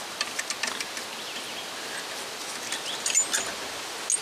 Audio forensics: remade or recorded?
recorded